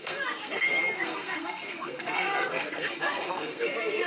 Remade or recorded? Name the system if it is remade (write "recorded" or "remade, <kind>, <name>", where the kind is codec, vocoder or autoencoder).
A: remade, codec, SNAC